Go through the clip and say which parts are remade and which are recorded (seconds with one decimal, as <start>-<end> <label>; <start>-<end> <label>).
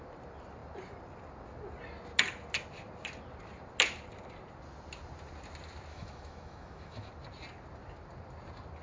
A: 0.0-5.9 recorded; 5.9-7.1 remade; 7.1-8.8 recorded